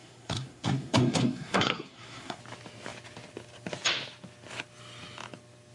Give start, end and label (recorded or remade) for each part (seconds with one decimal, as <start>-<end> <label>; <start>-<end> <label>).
0.0-2.4 remade; 2.4-5.7 recorded

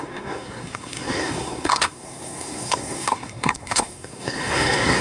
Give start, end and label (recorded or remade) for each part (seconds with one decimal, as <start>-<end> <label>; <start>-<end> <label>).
0.0-5.0 remade

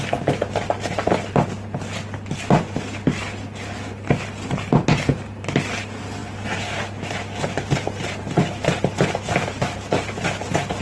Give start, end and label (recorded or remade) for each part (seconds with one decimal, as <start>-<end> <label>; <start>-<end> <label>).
0.0-10.8 recorded

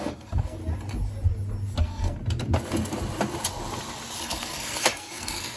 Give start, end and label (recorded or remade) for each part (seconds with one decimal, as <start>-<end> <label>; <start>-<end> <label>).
0.0-0.6 remade; 0.6-1.8 recorded; 1.8-2.2 remade; 2.2-4.2 recorded; 4.2-5.6 remade

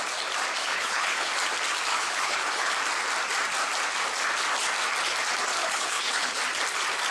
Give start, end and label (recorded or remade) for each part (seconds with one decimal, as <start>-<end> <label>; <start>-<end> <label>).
0.0-0.6 recorded; 0.6-1.3 remade; 1.3-1.9 recorded; 1.9-2.7 remade; 2.7-5.6 recorded; 5.6-6.4 remade; 6.4-7.1 recorded

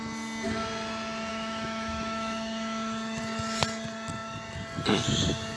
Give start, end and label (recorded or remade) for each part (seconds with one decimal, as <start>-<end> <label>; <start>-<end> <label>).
0.0-1.3 recorded; 1.3-3.2 remade; 3.2-5.6 recorded